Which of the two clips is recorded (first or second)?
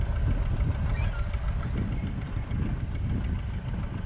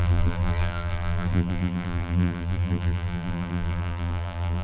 first